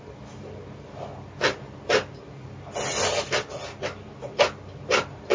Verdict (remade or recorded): recorded